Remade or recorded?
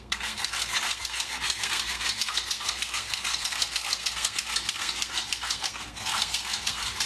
remade